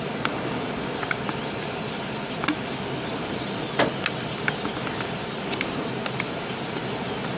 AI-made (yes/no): no